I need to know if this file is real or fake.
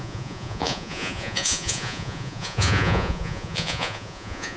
fake